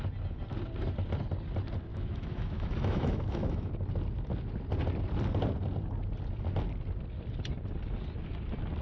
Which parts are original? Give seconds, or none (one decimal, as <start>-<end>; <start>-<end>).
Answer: 0.0-1.9; 3.7-8.8